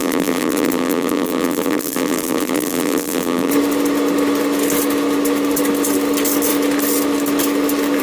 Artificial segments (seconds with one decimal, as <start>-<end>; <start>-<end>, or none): 0.0-3.5

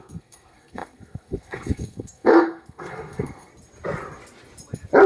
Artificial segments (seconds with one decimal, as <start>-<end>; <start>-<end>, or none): 0.0-3.5